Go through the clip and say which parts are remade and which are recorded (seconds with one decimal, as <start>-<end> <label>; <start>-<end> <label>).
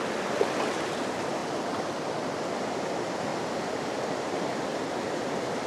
0.0-3.3 recorded; 3.3-5.1 remade; 5.1-5.7 recorded